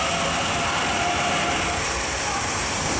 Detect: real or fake real